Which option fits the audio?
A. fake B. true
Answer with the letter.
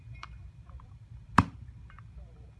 A